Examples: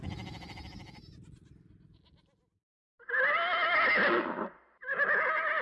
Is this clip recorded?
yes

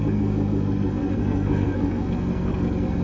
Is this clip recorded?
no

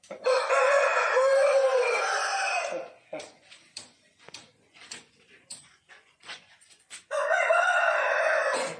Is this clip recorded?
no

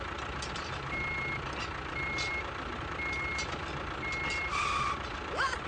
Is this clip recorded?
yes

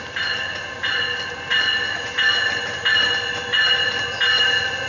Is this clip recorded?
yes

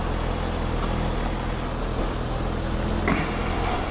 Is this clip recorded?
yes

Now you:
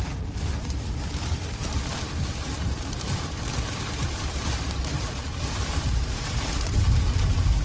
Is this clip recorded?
no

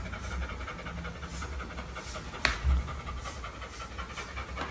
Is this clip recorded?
yes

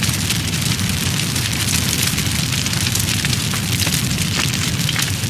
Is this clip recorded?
no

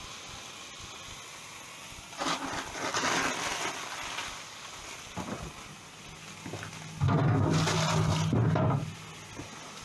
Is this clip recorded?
yes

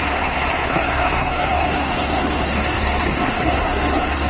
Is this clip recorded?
no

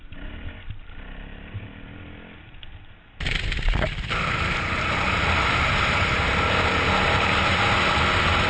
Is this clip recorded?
yes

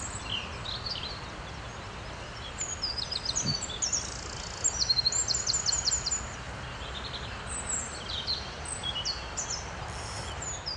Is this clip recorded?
yes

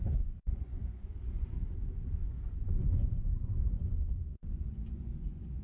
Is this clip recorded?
no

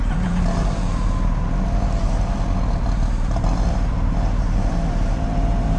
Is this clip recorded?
no